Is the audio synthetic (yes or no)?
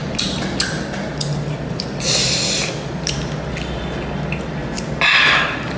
no